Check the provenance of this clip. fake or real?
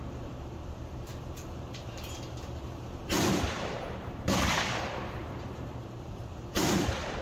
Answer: fake